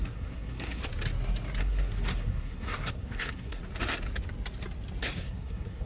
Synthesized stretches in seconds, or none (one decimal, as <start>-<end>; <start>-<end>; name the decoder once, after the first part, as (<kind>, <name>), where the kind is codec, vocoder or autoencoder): 0.0-0.8 (codec, SNAC); 1.6-3.6; 5.0-5.9